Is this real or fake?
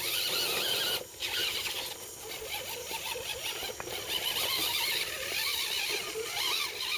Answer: real